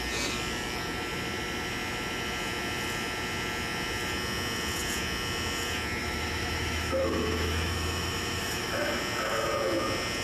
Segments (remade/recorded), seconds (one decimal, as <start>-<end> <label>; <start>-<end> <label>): 0.0-6.0 recorded; 6.0-9.0 remade; 9.0-10.2 recorded